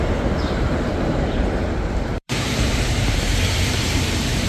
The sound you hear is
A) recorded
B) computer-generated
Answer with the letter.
B